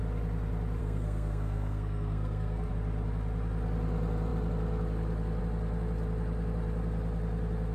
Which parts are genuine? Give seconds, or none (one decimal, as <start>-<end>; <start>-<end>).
0.0-0.8; 2.7-7.7